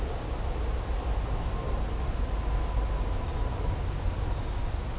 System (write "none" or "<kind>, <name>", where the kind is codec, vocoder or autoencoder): none